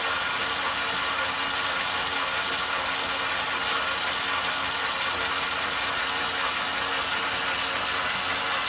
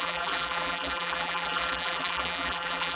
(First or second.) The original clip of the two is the first